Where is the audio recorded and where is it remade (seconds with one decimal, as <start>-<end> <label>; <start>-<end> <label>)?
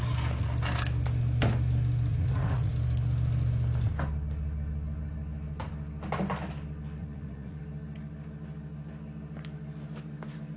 0.0-2.1 recorded; 2.1-2.7 remade; 2.7-7.0 recorded; 7.0-7.6 remade; 7.6-10.6 recorded